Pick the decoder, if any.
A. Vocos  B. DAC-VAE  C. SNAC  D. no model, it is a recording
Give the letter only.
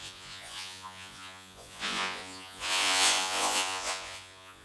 A